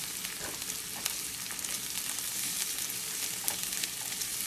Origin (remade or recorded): remade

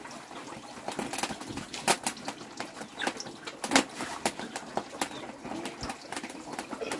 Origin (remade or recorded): recorded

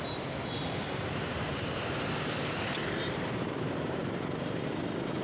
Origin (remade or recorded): remade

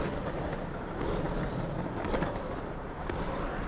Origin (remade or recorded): recorded